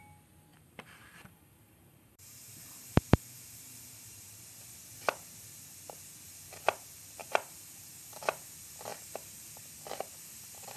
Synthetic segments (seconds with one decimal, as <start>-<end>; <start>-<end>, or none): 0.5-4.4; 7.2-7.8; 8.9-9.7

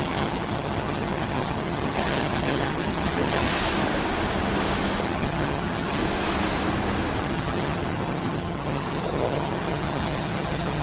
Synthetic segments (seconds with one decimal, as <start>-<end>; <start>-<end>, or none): 0.0-3.5; 5.0-6.0; 7.2-10.8

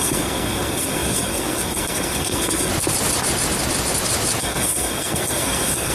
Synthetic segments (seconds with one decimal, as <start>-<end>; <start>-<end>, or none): 0.0-2.7; 4.4-5.9

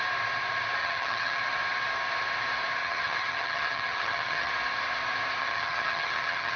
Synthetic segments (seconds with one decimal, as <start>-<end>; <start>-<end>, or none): 0.8-1.4; 2.8-4.5; 5.4-6.6

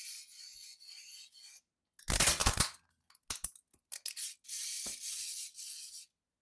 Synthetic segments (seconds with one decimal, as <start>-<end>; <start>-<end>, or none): none

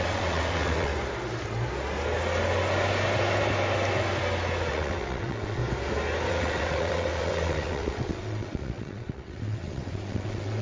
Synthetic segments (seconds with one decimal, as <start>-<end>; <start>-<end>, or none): 0.0-0.9; 4.7-5.6; 6.3-10.6

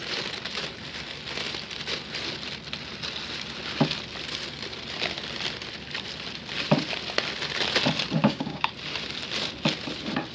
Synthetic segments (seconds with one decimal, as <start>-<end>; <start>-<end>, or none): 8.2-8.7

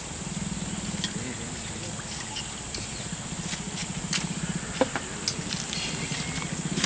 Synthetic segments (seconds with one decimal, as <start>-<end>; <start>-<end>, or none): none